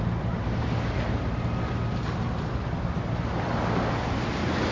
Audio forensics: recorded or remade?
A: recorded